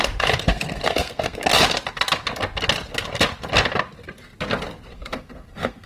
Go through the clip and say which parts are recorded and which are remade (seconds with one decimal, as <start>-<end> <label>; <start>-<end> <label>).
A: 0.0-0.5 recorded; 0.5-1.5 remade; 1.5-4.9 recorded; 4.9-5.9 remade